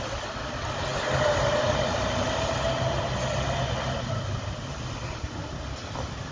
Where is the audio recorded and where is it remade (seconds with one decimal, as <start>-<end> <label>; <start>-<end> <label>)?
0.0-6.3 recorded